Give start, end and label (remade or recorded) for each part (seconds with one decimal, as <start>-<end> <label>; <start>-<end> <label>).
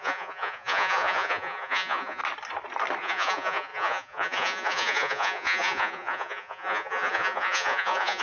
0.0-2.2 remade; 2.2-3.0 recorded; 3.0-8.2 remade